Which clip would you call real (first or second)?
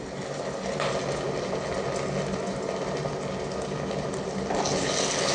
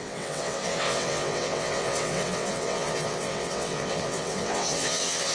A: first